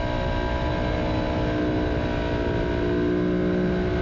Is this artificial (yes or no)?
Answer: no